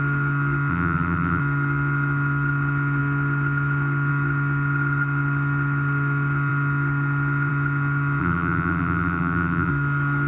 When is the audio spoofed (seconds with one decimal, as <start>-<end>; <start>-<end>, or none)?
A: 0.7-1.4; 8.2-9.7